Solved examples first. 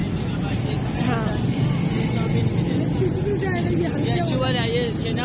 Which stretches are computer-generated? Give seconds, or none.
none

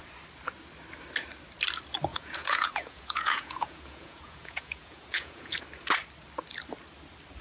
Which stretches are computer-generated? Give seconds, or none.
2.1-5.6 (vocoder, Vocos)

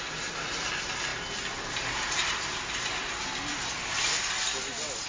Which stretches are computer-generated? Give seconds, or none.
none